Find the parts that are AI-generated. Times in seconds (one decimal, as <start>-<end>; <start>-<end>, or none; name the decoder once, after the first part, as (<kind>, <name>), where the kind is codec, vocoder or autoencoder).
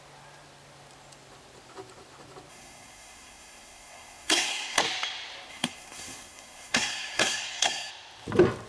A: 2.5-4.8 (codec, SNAC); 5.5-7.9